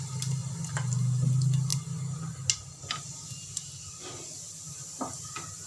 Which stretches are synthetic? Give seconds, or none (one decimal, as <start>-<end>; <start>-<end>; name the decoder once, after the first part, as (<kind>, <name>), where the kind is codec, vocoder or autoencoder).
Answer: none